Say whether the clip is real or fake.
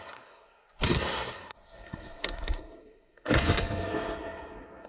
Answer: fake